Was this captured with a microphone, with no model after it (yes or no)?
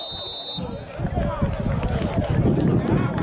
yes